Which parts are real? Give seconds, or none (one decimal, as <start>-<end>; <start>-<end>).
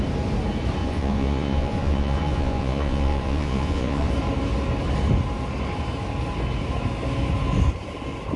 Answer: 0.0-0.8; 4.1-8.4